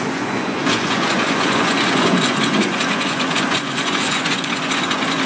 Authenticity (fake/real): fake